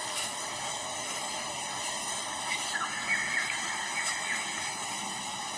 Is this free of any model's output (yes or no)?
no